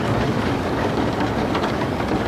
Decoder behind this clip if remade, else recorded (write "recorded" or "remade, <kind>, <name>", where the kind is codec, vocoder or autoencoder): remade, codec, DAC